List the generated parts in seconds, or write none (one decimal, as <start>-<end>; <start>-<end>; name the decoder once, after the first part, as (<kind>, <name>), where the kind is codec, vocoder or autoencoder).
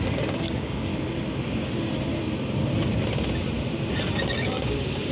0.0-0.9 (codec, DAC); 4.0-5.1